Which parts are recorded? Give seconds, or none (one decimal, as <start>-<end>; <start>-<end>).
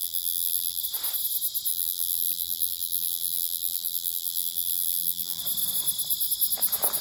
0.8-1.7; 5.4-7.0